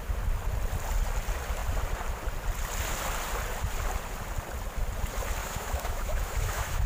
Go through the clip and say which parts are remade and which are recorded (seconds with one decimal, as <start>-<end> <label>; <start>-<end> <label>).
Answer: 0.0-5.4 recorded; 5.4-6.9 remade